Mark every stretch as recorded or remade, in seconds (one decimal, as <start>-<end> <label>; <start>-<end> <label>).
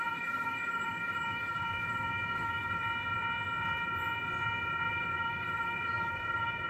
0.0-2.8 remade; 2.8-4.9 recorded; 4.9-6.7 remade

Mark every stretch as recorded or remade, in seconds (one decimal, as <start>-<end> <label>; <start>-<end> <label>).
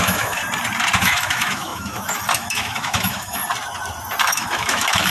0.0-0.4 remade; 0.4-1.0 recorded; 1.0-3.4 remade; 3.4-4.2 recorded; 4.2-5.1 remade